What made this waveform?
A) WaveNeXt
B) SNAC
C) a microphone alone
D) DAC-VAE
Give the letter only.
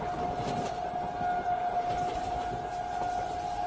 C